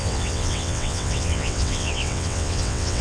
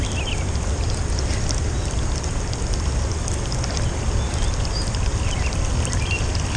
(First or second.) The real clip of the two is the second